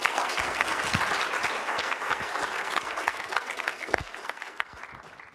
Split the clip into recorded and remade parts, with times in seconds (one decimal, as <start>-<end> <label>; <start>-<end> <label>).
0.0-1.0 remade; 1.0-1.6 recorded; 1.6-4.8 remade; 4.8-5.3 recorded